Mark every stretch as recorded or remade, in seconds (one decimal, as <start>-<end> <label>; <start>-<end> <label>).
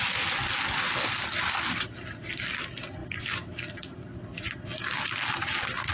0.0-5.9 recorded